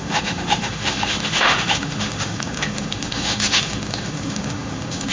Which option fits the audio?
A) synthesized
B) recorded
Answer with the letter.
A